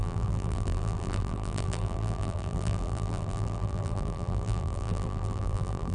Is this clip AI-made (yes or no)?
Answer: yes